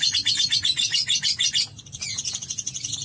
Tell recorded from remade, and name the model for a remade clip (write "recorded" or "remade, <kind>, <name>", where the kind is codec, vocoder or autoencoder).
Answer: recorded